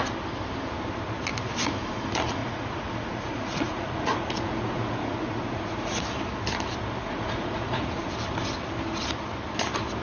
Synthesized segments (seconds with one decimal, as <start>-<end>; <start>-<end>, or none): 2.4-6.0; 7.0-8.1